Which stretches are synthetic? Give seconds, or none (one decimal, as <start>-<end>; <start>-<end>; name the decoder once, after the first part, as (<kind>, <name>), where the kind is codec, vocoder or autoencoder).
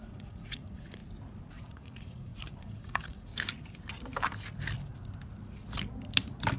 0.0-1.0 (vocoder, Vocos); 1.5-3.3